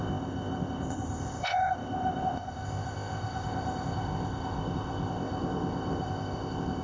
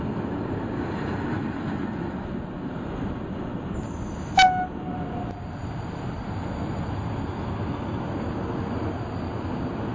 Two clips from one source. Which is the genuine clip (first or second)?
second